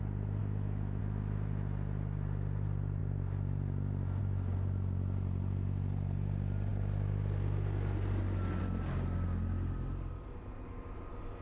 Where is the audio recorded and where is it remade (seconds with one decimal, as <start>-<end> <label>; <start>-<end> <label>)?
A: 0.0-0.4 recorded; 0.4-1.0 remade; 1.0-11.4 recorded